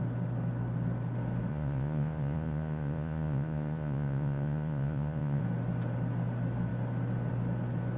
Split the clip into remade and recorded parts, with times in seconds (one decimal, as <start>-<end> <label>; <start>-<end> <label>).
0.0-1.5 recorded; 1.5-5.4 remade; 5.4-8.0 recorded